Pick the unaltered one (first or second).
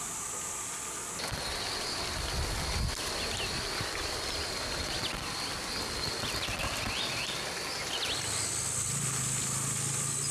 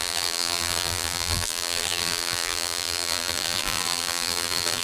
first